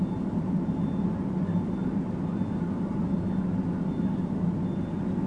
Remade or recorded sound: recorded